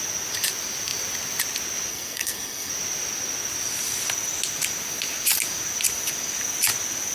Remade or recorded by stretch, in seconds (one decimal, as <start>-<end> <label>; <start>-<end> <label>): 0.0-1.9 recorded; 1.9-2.7 remade; 2.7-7.1 recorded